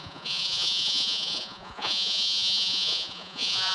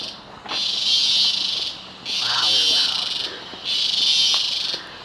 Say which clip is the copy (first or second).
first